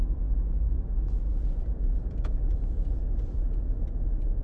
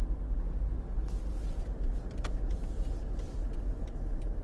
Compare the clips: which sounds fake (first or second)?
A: first